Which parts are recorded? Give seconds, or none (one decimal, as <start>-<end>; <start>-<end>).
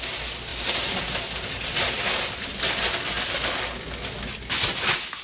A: 0.0-5.2